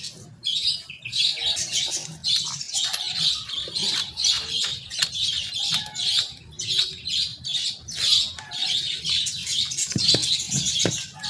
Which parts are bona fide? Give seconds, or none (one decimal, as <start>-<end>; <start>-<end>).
0.0-11.3